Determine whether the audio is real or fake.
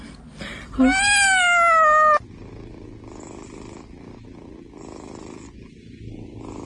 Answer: real